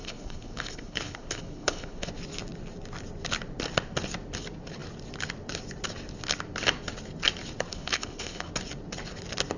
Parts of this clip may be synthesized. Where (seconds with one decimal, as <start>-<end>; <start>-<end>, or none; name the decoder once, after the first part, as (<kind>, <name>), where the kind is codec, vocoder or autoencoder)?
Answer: 0.0-2.1 (codec, HILCodec); 7.7-8.5